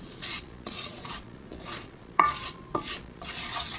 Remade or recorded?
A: remade